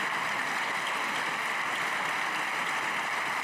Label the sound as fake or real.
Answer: real